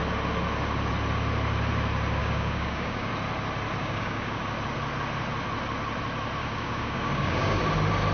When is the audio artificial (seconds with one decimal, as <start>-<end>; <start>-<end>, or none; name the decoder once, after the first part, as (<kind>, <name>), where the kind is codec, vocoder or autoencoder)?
2.2-3.1 (codec, DAC); 3.8-4.4; 6.4-7.6